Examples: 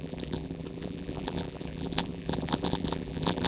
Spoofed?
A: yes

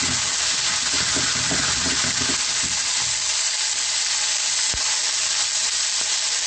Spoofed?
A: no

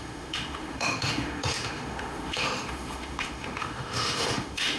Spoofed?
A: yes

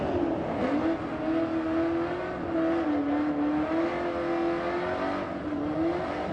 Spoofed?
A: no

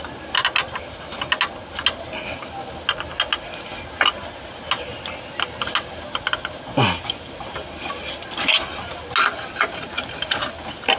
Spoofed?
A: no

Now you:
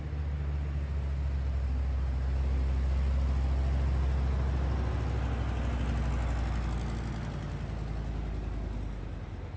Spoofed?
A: no